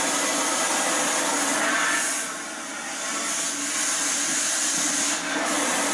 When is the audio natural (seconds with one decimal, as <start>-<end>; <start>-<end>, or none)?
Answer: 0.0-1.8; 2.3-5.9